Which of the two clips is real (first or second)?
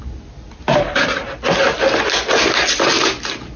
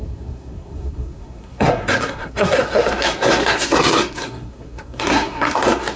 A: first